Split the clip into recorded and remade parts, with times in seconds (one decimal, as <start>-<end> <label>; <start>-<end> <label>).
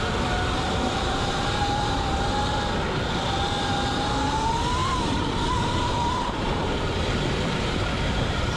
0.0-1.0 recorded; 1.0-1.8 remade; 1.8-4.8 recorded; 4.8-8.6 remade